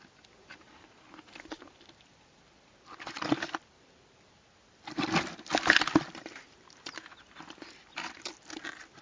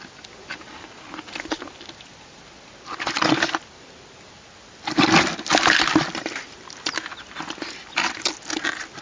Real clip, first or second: second